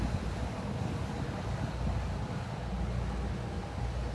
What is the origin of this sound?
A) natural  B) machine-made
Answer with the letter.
A